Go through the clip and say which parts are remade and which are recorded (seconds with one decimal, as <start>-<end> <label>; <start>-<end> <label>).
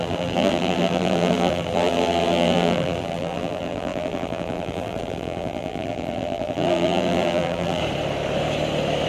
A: 0.0-7.8 remade; 7.8-9.1 recorded